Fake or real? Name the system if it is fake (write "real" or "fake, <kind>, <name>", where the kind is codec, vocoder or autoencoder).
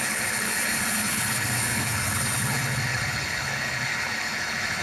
fake, codec, HILCodec